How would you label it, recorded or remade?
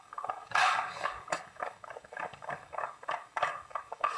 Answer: remade